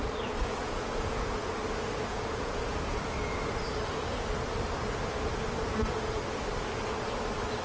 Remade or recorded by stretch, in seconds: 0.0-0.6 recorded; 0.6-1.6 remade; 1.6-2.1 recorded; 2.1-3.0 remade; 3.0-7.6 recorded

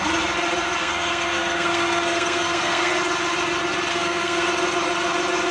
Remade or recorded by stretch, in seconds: 0.0-0.8 recorded; 0.8-2.9 remade; 2.9-3.9 recorded; 3.9-4.5 remade; 4.5-5.5 recorded

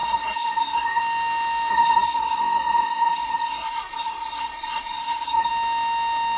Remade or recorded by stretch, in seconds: 0.0-1.0 remade; 1.0-1.7 recorded; 1.7-5.5 remade; 5.5-6.4 recorded

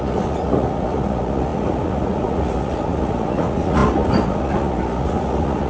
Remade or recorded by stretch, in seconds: 0.0-5.7 remade

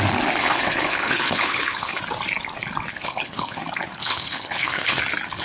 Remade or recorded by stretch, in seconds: 0.0-0.4 recorded; 0.4-2.0 remade; 2.0-2.9 recorded; 2.9-3.6 remade; 3.6-4.0 recorded; 4.0-5.0 remade; 5.0-5.4 recorded

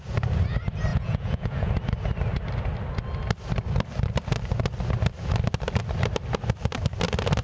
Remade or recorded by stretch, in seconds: 0.0-0.9 recorded; 0.9-1.7 remade; 1.7-7.4 recorded

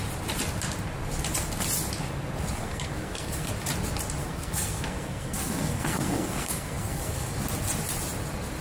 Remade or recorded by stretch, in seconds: 0.0-2.6 recorded; 2.6-3.5 remade; 3.5-4.2 recorded; 4.2-7.3 remade; 7.3-8.6 recorded